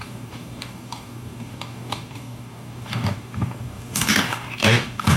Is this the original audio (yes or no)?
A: no